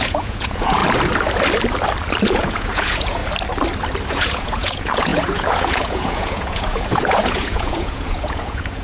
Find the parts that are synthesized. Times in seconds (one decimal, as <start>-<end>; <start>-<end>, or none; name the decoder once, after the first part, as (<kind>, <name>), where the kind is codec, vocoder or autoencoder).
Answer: 0.0-0.8 (vocoder, Vocos); 2.3-3.2; 4.1-8.8